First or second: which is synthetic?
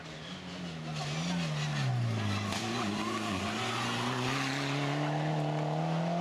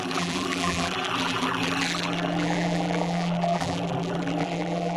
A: second